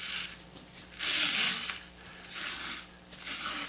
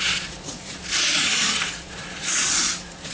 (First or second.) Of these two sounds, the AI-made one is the second